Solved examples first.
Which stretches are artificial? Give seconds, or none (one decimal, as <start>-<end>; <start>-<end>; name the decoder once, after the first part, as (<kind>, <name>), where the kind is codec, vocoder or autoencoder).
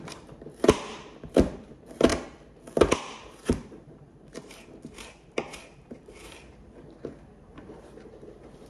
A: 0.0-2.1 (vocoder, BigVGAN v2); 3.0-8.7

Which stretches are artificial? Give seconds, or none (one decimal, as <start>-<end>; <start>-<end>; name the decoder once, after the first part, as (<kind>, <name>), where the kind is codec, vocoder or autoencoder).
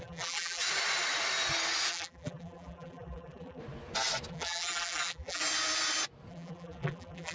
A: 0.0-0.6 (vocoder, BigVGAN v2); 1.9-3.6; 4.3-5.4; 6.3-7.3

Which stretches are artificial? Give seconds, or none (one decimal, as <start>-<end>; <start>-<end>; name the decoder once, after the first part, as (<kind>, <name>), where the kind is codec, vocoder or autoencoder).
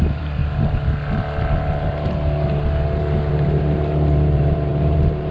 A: 0.0-0.4 (vocoder, BigVGAN v2); 3.3-5.3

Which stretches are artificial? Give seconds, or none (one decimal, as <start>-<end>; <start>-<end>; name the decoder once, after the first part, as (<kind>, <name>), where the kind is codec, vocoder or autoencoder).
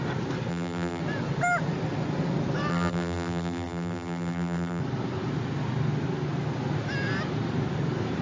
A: 0.5-1.0 (vocoder, BigVGAN v2); 2.7-4.8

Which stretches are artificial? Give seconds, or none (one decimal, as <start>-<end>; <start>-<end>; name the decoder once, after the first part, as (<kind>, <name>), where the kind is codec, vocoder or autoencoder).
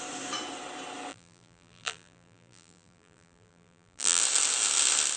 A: 1.1-4.2 (vocoder, BigVGAN v2)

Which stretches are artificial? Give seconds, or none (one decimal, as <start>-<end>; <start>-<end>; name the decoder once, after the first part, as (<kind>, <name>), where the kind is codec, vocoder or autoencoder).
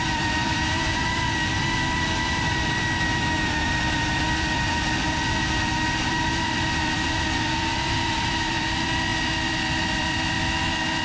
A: 0.0-11.0 (vocoder, BigVGAN v2)